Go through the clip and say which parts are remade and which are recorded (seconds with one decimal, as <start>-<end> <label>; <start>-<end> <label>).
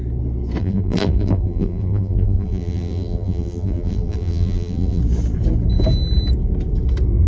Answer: 0.0-0.6 recorded; 0.6-5.0 remade; 5.0-7.3 recorded